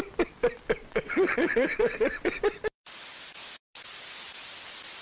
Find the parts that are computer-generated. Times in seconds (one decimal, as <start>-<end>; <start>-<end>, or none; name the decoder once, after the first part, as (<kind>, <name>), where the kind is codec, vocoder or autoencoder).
0.8-2.4 (vocoder, WaveNeXt)